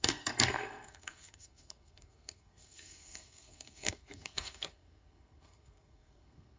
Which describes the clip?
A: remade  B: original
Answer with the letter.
A